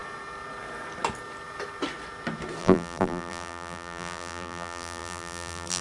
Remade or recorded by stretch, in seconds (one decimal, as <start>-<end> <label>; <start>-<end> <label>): 0.0-2.6 recorded; 2.6-5.8 remade